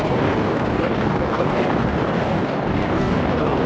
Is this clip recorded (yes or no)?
no